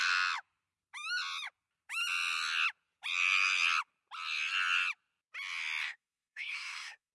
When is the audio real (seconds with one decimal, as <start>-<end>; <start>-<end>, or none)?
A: 0.0-5.8